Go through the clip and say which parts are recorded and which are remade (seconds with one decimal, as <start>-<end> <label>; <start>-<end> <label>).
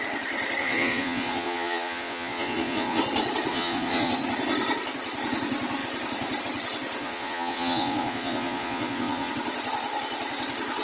0.0-0.6 recorded; 0.6-3.0 remade; 3.0-3.5 recorded; 3.5-4.1 remade; 4.1-7.0 recorded; 7.0-9.3 remade; 9.3-10.8 recorded